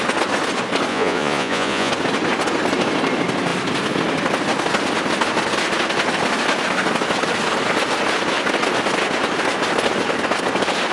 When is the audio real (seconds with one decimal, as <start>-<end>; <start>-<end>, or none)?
0.0-0.9; 1.9-10.9